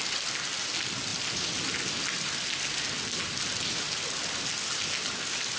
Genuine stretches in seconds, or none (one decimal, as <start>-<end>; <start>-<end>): 0.0-5.6